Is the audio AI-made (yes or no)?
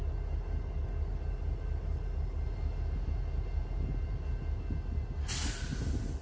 no